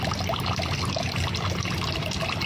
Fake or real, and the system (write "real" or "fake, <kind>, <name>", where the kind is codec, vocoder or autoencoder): real